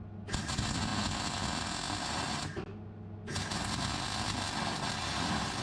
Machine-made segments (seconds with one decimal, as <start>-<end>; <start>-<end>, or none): none